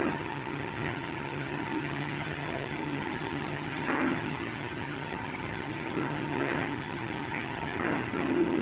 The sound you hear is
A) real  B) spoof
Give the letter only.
B